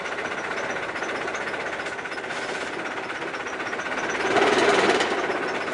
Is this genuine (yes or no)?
yes